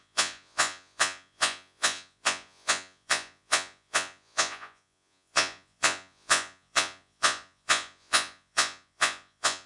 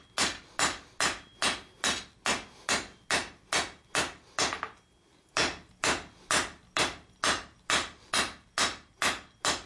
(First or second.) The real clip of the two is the second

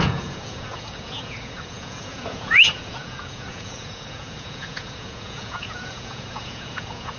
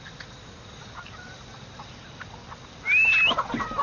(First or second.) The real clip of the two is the second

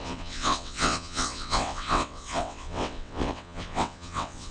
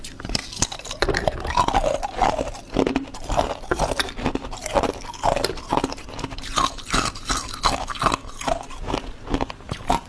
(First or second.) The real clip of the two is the second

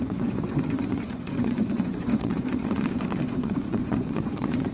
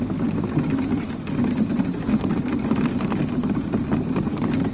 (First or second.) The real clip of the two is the second